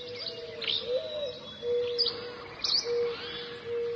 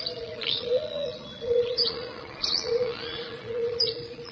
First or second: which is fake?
second